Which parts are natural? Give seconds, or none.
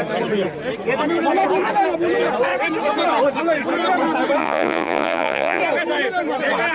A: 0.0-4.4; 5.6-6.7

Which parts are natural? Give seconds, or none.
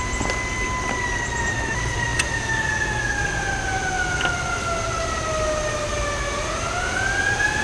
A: 0.0-7.6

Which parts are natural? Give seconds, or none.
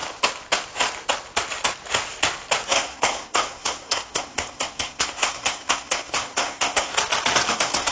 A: 0.0-2.7; 6.9-7.5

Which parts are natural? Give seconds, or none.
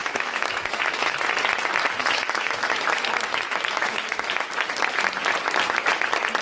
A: 1.2-2.0; 4.5-6.4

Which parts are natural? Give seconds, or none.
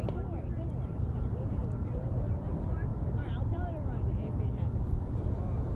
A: 1.6-2.1; 4.1-5.8